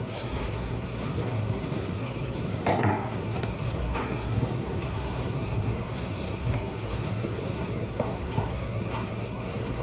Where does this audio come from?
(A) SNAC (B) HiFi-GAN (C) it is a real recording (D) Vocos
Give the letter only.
A